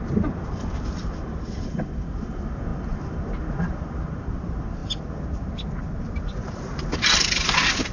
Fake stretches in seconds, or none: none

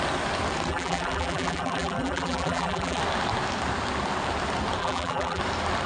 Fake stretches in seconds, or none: 0.7-3.0 (vocoder, BigVGAN v2); 4.8-5.4

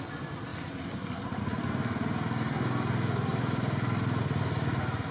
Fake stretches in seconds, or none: none

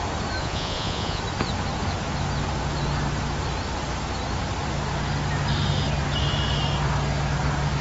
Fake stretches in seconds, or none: 0.4-1.2 (vocoder, Vocos)

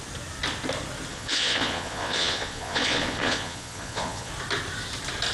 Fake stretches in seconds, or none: 1.1-4.3 (vocoder, Vocos)

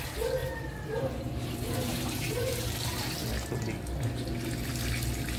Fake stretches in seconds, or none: 0.4-3.3 (vocoder, BigVGAN v2)